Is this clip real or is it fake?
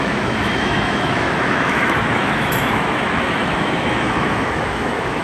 fake